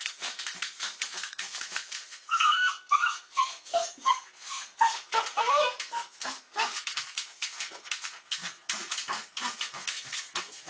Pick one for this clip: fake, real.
fake